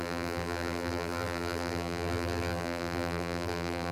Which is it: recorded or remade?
remade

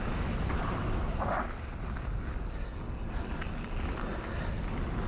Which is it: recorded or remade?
recorded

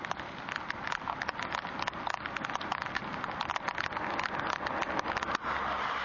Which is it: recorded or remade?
recorded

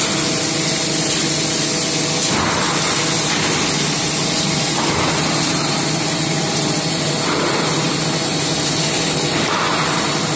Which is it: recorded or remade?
recorded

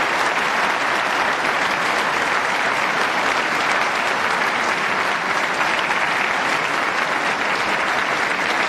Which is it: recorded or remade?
recorded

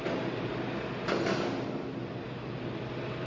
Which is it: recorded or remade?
recorded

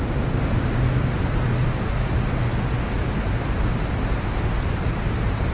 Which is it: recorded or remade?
recorded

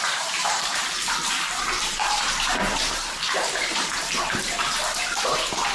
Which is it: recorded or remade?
remade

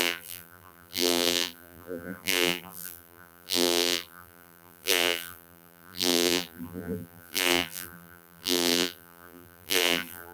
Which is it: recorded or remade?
remade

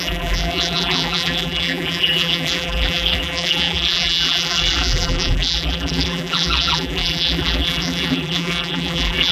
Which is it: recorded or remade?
remade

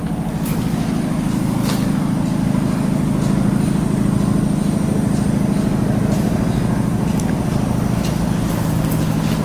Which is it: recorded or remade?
recorded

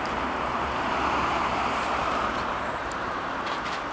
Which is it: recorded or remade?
remade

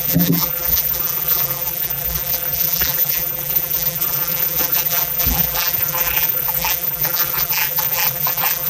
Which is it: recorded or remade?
remade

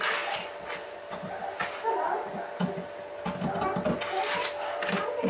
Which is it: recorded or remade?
recorded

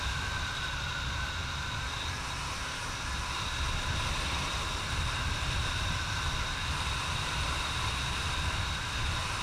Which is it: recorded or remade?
recorded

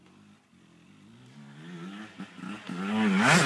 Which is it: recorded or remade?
recorded